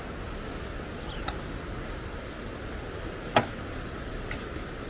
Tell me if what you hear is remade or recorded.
recorded